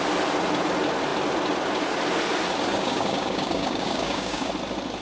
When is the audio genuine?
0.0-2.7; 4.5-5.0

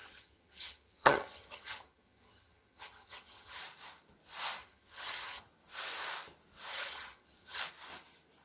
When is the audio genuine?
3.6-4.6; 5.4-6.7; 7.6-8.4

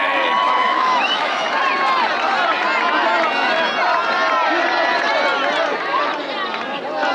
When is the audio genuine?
0.0-0.4; 1.6-7.1

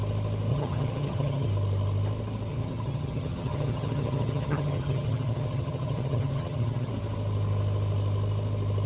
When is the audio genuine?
0.0-0.5; 1.5-2.5; 6.9-8.9

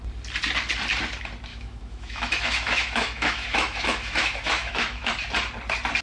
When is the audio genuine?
0.0-1.5; 5.1-6.0

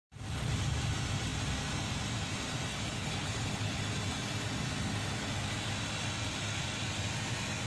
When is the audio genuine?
0.0-2.7; 3.8-7.7